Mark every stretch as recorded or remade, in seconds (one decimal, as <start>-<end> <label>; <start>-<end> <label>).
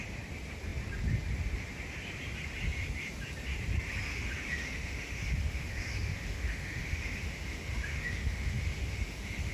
0.0-4.1 recorded; 4.1-9.5 remade